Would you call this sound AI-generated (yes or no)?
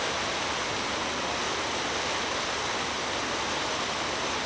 no